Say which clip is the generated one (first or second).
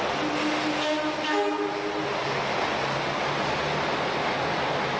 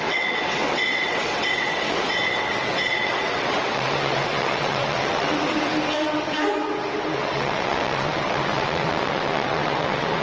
second